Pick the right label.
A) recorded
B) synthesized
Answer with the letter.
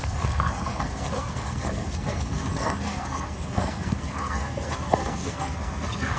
B